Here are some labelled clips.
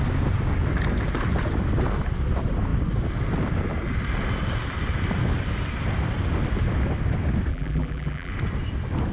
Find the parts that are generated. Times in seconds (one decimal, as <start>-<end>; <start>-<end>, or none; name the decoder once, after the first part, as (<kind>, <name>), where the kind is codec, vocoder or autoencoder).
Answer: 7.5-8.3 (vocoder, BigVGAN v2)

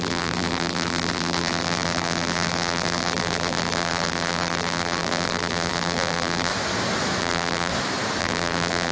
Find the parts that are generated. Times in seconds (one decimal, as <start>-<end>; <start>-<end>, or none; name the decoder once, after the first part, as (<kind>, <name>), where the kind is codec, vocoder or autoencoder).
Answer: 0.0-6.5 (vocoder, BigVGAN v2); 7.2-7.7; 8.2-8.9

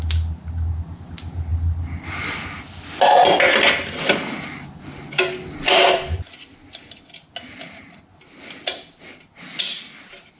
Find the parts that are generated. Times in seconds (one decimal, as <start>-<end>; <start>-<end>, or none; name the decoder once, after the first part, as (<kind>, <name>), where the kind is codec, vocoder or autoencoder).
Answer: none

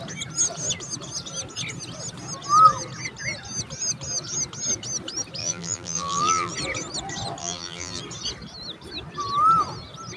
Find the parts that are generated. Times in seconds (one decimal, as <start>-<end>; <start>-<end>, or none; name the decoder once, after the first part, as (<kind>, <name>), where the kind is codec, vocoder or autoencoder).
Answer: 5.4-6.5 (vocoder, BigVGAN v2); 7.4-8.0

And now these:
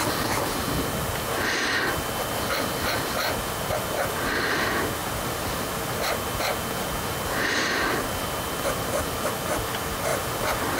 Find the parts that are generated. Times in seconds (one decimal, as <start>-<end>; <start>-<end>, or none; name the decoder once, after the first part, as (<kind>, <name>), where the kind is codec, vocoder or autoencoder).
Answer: 5.0-5.8 (vocoder, BigVGAN v2)

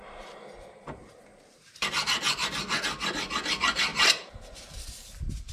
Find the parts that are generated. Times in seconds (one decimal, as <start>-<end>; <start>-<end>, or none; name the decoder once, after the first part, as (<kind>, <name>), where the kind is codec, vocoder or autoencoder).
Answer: 1.0-2.1 (vocoder, BigVGAN v2); 3.9-4.9